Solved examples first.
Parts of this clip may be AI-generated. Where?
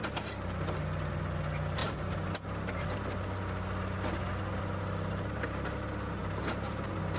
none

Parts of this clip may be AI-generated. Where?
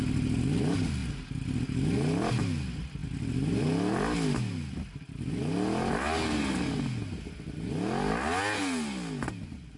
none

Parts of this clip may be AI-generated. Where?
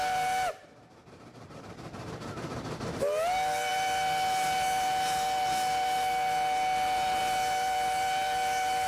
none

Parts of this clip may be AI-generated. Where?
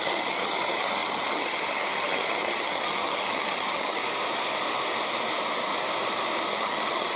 0.0-4.0 (vocoder, HiFi-GAN); 6.5-7.2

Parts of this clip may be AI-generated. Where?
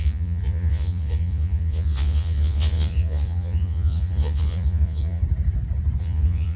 0.0-5.2 (vocoder, Vocos); 6.0-6.6